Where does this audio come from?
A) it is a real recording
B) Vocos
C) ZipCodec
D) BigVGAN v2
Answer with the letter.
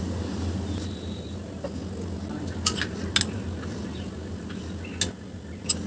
A